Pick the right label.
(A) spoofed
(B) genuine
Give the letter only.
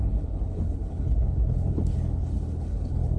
A